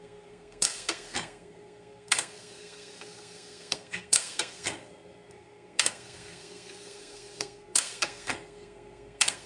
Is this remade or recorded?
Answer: remade